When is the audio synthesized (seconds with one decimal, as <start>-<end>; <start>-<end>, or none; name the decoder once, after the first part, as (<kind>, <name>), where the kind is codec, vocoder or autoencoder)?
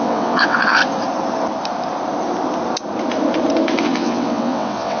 0.0-0.8 (vocoder, WaveNeXt); 3.8-5.0